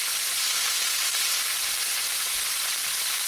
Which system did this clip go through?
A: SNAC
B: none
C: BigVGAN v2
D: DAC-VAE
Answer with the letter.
B